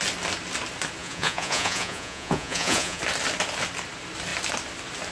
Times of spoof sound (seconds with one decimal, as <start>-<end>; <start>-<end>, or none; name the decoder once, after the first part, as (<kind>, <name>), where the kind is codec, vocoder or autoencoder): 1.0-3.0 (vocoder, Vocos)